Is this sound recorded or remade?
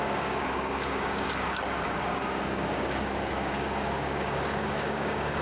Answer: remade